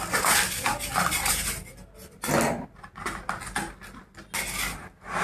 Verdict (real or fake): real